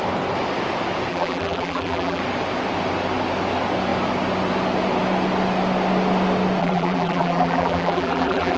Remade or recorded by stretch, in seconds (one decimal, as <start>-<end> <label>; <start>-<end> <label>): 0.0-1.1 recorded; 1.1-2.2 remade; 2.2-6.6 recorded; 6.6-8.6 remade